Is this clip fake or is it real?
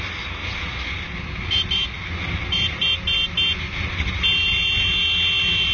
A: real